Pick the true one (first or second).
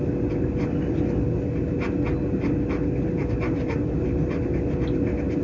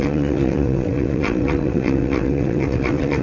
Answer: first